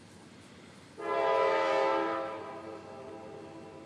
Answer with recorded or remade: recorded